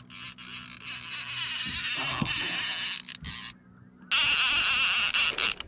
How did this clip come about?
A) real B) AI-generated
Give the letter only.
A